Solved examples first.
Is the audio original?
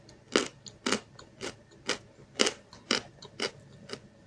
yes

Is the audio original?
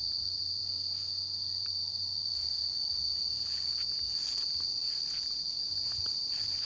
yes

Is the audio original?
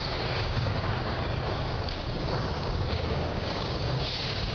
no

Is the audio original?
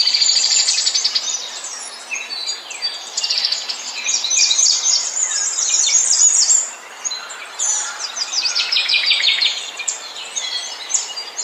no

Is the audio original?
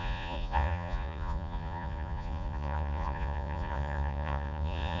no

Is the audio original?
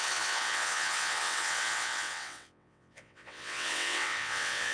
no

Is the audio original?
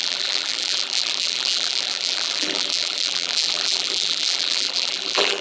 no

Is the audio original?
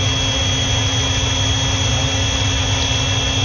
yes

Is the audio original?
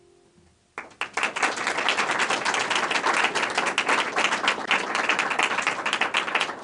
yes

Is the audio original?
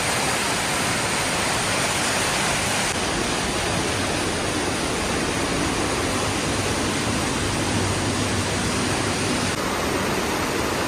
yes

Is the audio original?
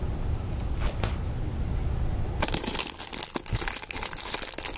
yes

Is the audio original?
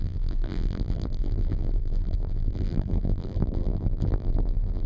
no